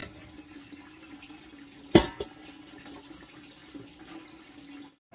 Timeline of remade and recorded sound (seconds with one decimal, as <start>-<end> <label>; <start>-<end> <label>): 0.0-5.1 recorded